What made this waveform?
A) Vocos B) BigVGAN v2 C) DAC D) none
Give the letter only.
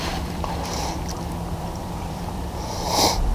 B